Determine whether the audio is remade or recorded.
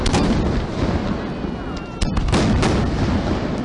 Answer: recorded